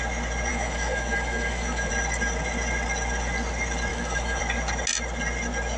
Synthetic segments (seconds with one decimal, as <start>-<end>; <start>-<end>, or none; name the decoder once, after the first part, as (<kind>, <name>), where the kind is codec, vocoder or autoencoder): 0.5-1.9 (autoencoder, DAC-VAE); 3.9-4.4